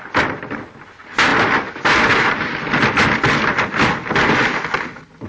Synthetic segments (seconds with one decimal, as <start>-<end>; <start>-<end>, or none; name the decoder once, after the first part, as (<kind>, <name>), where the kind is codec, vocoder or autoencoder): none